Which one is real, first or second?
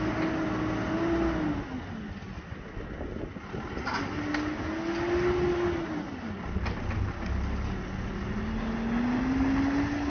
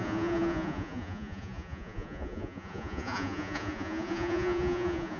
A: first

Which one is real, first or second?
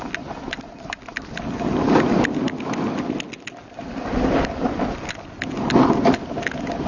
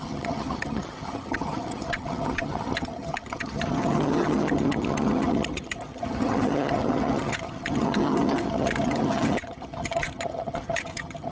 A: first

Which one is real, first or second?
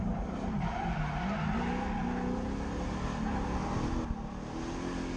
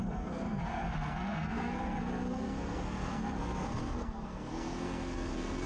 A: first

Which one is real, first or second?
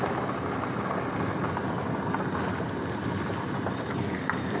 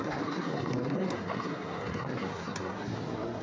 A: first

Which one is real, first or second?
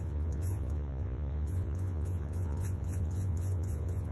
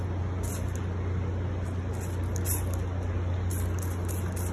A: second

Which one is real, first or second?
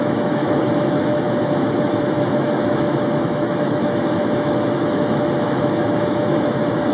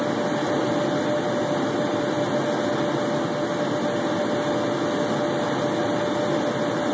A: second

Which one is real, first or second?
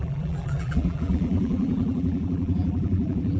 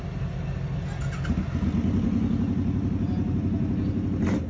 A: second